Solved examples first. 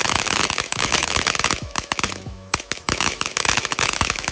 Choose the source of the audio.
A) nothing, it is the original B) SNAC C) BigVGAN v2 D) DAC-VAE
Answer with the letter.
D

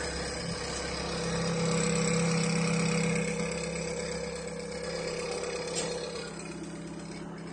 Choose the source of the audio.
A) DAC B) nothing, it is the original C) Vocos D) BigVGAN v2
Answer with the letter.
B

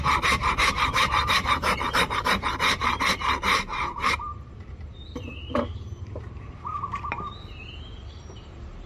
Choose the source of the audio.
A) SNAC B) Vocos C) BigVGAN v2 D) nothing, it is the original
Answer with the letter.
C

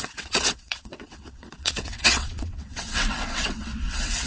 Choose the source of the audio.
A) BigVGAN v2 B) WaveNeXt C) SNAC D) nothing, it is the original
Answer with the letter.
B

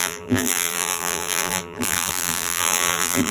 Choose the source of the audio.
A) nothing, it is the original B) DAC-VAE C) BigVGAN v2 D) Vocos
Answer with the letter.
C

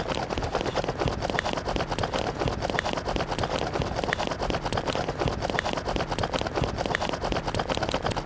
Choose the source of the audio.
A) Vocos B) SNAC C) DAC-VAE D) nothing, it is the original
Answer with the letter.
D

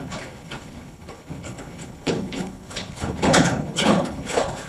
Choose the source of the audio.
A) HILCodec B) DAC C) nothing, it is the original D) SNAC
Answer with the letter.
A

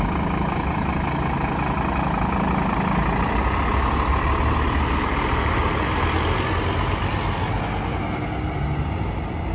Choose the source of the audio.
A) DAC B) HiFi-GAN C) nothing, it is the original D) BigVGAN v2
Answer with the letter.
C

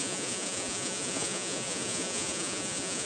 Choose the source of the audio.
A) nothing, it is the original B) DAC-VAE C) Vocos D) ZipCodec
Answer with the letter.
C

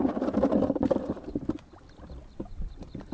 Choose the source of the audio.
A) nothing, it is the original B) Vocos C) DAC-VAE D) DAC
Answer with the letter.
A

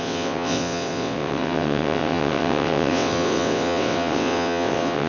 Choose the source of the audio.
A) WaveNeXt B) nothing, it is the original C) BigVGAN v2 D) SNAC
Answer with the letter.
A